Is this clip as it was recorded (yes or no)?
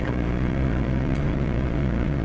no